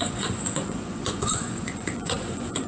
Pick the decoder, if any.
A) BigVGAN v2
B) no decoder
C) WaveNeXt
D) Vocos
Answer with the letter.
D